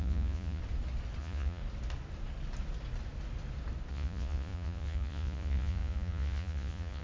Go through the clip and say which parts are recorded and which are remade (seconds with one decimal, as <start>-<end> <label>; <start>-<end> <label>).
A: 0.0-0.6 remade; 0.6-1.2 recorded; 1.2-1.6 remade; 1.6-3.9 recorded; 3.9-7.0 remade